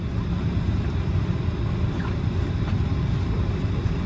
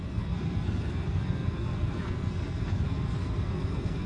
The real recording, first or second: first